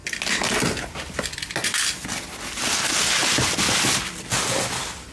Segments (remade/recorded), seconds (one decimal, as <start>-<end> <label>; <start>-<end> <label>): 0.0-3.2 recorded; 3.2-5.1 remade